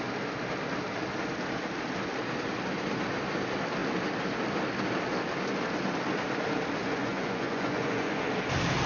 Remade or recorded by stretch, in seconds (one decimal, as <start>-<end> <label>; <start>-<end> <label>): 0.0-6.8 recorded; 6.8-8.2 remade; 8.2-8.9 recorded